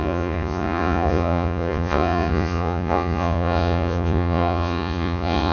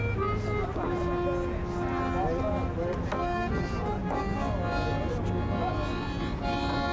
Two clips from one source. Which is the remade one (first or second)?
first